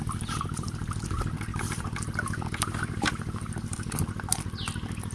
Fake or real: real